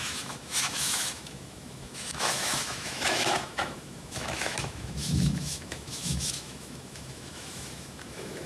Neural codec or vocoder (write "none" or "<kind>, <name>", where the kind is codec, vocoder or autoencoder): autoencoder, DAC-VAE